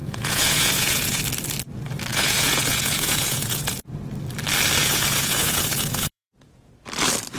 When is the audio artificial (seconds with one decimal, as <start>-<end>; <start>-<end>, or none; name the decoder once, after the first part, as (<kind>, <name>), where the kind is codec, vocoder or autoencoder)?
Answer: 0.0-1.2 (vocoder, Vocos); 2.1-3.9; 4.8-6.7